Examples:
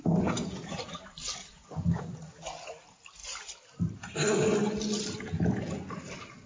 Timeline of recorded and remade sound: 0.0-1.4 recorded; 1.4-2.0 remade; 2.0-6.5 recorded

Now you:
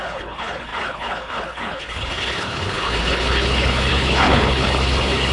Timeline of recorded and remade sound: 0.0-5.3 remade

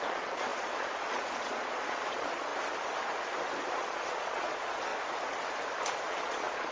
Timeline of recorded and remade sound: 0.0-2.5 remade; 2.5-3.7 recorded; 3.7-4.9 remade; 4.9-5.9 recorded; 5.9-6.7 remade

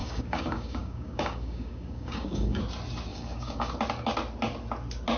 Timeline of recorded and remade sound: 0.0-2.6 remade; 2.6-3.1 recorded; 3.1-3.7 remade; 3.7-5.2 recorded

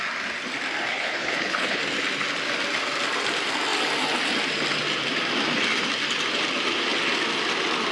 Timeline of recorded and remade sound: 0.0-0.9 recorded; 0.9-1.8 remade; 1.8-7.9 recorded

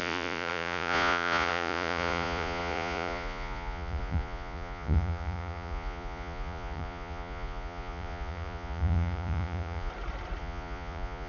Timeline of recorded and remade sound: 0.0-9.9 remade; 9.9-10.4 recorded; 10.4-11.3 remade

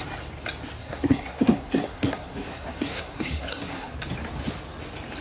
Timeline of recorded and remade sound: 0.0-0.8 recorded; 0.8-3.9 remade; 3.9-5.2 recorded